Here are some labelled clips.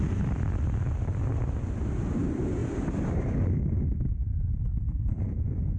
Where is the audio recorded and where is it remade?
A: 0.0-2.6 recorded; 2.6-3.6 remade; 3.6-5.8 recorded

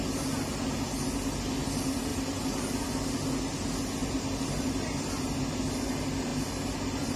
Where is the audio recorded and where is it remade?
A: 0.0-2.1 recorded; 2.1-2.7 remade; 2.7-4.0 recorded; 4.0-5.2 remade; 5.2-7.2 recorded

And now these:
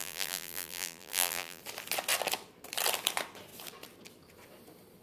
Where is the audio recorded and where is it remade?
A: 0.0-1.6 remade; 1.6-5.0 recorded

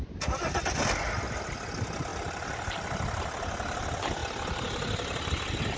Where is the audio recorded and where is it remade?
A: 0.0-5.8 recorded

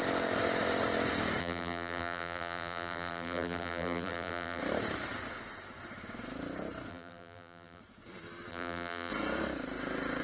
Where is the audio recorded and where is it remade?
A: 0.0-1.4 recorded; 1.4-4.6 remade; 4.6-6.9 recorded; 6.9-7.8 remade; 7.8-8.5 recorded; 8.5-9.1 remade; 9.1-10.2 recorded